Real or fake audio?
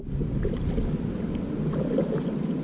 real